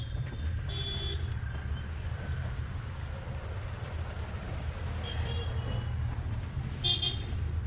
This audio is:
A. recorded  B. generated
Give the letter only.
A